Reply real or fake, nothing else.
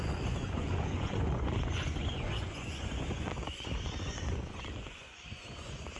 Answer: fake